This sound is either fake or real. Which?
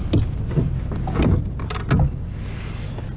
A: real